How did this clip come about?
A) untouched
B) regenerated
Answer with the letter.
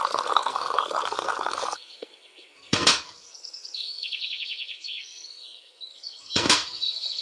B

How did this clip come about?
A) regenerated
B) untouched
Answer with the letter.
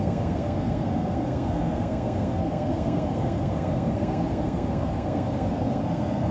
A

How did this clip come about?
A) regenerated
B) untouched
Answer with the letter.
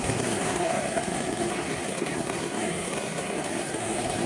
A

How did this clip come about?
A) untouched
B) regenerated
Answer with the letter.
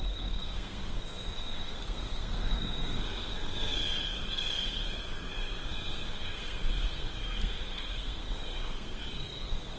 B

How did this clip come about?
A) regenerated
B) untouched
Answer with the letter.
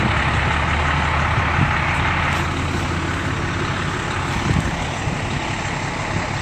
B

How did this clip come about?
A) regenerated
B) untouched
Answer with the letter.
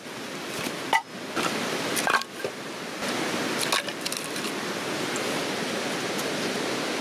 B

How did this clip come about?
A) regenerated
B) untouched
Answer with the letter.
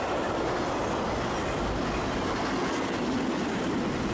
B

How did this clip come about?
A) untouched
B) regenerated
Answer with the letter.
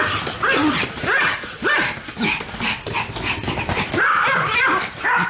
A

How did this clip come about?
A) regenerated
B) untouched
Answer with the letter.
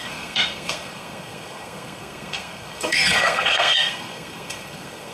A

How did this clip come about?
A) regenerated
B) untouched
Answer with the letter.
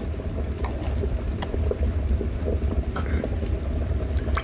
B